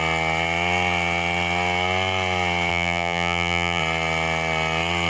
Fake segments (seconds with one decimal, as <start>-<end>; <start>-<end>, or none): 2.7-3.8